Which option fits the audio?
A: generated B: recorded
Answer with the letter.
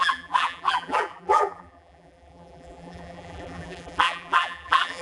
A